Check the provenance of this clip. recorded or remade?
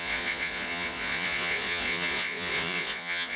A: remade